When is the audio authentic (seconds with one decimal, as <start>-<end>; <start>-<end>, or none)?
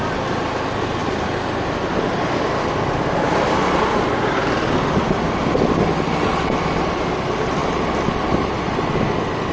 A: 0.0-9.5